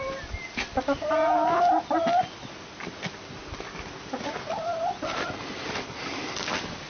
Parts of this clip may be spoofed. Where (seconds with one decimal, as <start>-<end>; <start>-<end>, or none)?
none

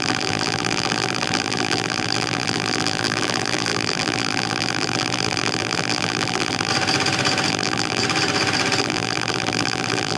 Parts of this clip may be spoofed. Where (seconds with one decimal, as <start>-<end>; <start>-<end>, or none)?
0.0-6.7; 7.5-8.0; 8.8-10.2

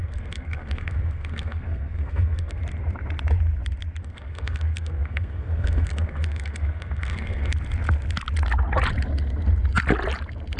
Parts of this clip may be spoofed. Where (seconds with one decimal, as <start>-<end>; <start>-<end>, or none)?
0.0-2.6; 4.0-7.5

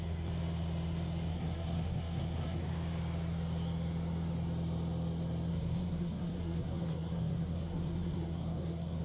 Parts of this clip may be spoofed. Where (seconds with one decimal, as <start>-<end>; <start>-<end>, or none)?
1.3-2.7; 5.5-9.0

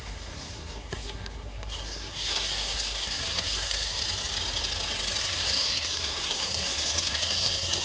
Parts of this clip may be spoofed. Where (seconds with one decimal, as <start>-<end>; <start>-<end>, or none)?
0.0-4.0; 5.2-7.8

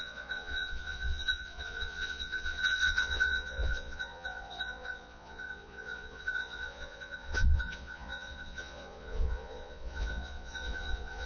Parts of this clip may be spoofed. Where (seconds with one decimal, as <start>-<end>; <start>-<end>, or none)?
0.0-11.3

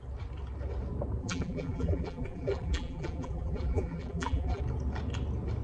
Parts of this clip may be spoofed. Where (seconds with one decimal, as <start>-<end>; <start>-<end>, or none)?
1.2-4.6

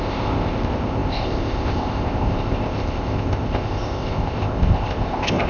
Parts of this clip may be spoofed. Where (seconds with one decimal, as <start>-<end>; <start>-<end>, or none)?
0.0-5.5